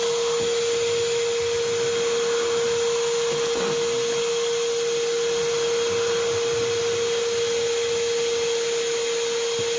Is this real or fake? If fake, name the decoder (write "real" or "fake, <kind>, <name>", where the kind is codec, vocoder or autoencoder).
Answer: real